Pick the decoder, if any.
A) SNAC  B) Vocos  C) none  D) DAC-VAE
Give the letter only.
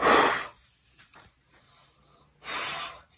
C